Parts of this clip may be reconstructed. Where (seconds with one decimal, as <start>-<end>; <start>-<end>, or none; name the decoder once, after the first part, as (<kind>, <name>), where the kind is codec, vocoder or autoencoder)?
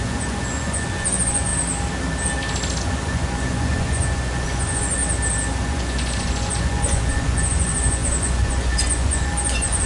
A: 0.0-1.5 (vocoder, Vocos); 2.8-5.0; 5.6-9.9